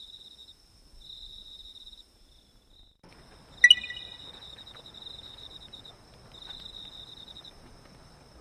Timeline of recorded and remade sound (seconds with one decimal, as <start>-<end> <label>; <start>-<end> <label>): 0.0-8.4 recorded